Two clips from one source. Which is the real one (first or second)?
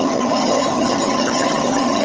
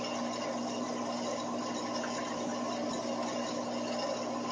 second